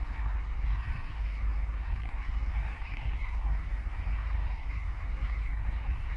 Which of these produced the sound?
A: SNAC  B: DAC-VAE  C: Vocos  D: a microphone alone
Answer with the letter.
A